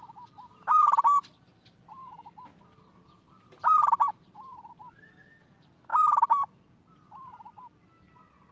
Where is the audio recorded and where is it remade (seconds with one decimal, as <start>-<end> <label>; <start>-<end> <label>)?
0.0-8.5 recorded